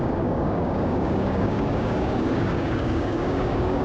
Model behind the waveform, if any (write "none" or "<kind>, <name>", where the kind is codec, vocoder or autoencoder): codec, DAC